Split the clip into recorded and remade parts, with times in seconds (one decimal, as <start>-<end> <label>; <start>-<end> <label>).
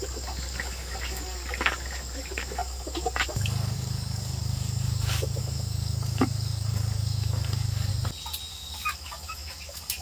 0.0-7.9 remade; 7.9-8.5 recorded; 8.5-10.0 remade